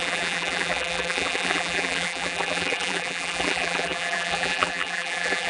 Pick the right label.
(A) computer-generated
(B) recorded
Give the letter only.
A